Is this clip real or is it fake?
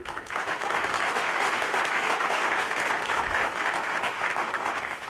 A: fake